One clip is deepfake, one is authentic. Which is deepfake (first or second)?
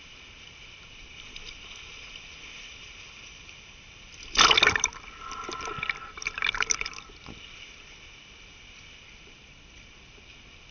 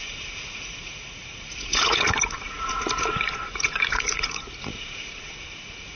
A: second